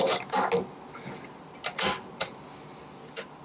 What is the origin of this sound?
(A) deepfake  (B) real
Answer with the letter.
B